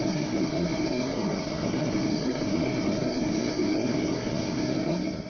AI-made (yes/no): yes